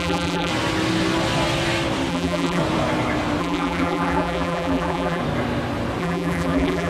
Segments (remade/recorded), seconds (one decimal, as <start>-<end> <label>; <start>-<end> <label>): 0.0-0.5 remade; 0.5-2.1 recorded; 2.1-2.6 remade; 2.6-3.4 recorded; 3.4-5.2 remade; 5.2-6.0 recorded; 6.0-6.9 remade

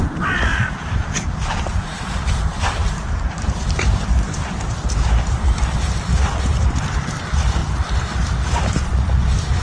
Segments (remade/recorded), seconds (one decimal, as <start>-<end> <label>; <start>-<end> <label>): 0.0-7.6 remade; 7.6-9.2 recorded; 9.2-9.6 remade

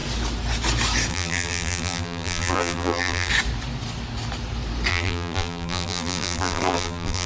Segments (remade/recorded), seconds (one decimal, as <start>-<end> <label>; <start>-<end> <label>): 0.0-1.1 recorded; 1.1-3.3 remade; 3.3-4.9 recorded; 4.9-7.3 remade

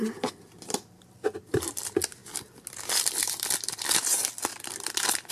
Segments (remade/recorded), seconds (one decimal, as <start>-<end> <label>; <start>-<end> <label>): 0.0-2.2 remade; 2.2-2.9 recorded; 2.9-5.3 remade